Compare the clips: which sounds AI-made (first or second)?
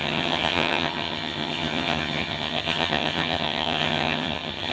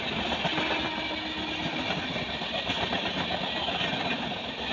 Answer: first